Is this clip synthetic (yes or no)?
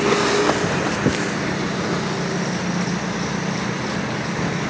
no